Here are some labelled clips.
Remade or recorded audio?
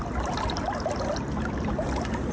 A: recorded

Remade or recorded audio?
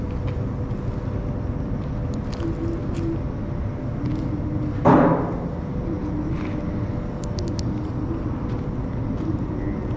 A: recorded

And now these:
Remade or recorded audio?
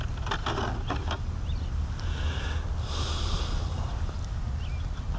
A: recorded